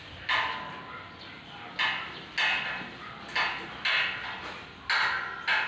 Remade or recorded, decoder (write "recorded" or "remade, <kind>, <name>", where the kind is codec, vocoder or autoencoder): recorded